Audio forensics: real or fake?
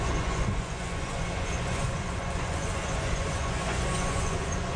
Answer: fake